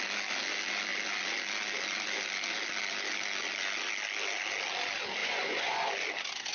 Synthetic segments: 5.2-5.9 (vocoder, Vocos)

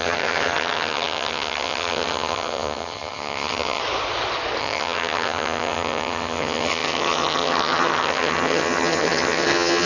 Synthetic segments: 0.0-3.8 (vocoder, HiFi-GAN); 4.6-9.9

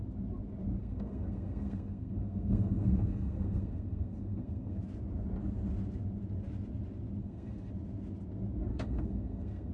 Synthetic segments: 0.8-4.8 (codec, SNAC); 7.2-7.7; 8.7-9.7

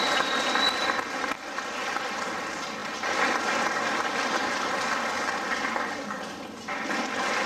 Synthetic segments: none

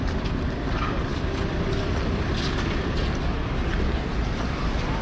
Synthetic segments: none

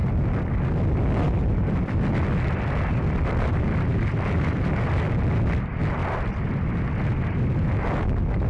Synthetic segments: 0.0-5.1 (vocoder, BigVGAN v2); 6.0-7.7

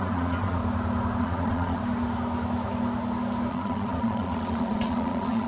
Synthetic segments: 0.0-0.6 (vocoder, Vocos); 1.2-1.8; 3.5-5.5

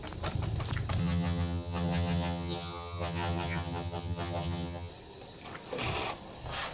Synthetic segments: 1.0-4.9 (vocoder, HiFi-GAN)